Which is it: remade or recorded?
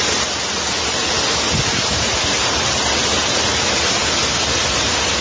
recorded